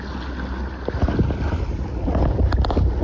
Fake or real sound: real